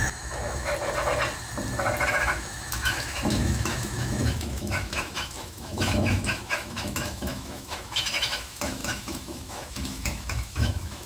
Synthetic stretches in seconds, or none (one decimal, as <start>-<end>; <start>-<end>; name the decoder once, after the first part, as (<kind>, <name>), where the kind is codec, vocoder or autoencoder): 0.0-0.7 (autoencoder, DAC-VAE); 2.1-11.1